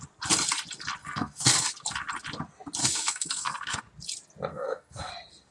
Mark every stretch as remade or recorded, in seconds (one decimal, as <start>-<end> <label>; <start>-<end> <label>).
0.0-1.0 recorded; 1.0-1.7 remade; 1.7-2.8 recorded; 2.8-3.8 remade; 3.8-4.5 recorded; 4.5-5.1 remade; 5.1-5.5 recorded